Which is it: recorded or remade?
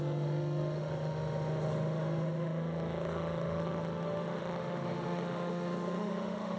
remade